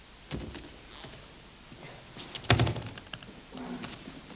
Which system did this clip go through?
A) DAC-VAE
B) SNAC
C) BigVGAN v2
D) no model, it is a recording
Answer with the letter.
D